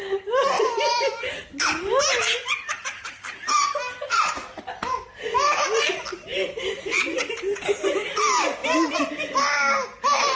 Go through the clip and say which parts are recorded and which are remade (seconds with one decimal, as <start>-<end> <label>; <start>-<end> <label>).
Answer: 0.0-6.3 recorded; 6.3-7.0 remade; 7.0-8.6 recorded; 8.6-9.4 remade; 9.4-10.4 recorded